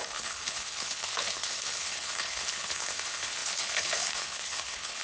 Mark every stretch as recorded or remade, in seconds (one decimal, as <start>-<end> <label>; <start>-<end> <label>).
0.0-5.0 remade